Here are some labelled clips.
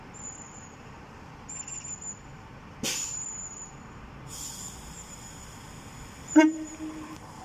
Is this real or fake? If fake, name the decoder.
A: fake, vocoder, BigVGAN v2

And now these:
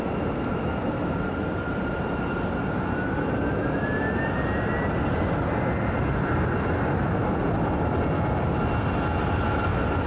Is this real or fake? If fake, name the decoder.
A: real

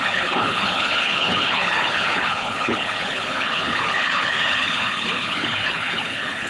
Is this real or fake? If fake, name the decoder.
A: fake, codec, HILCodec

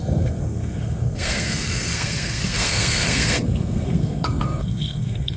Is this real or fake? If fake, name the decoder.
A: fake, codec, SNAC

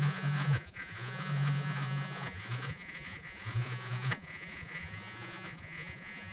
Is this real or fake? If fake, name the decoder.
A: fake, vocoder, Vocos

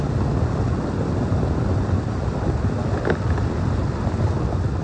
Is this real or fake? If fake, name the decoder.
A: real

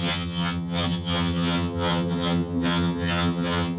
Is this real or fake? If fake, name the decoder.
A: fake, vocoder, HiFi-GAN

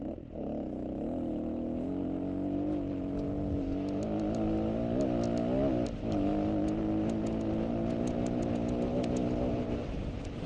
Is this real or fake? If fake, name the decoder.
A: real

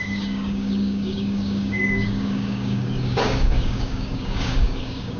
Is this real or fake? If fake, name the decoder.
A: fake, codec, DAC